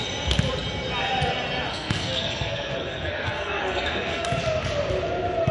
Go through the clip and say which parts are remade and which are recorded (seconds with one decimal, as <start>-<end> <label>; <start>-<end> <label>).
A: 0.0-1.7 recorded; 1.7-4.3 remade; 4.3-5.5 recorded